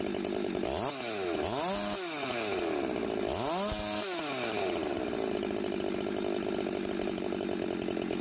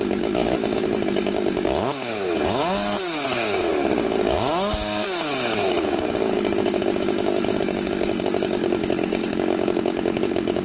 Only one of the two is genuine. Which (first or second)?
first